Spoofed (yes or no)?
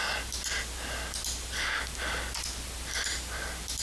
no